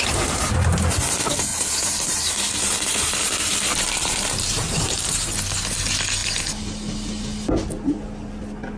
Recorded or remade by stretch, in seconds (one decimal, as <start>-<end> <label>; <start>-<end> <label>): 0.0-1.5 recorded; 1.5-5.3 remade; 5.3-8.8 recorded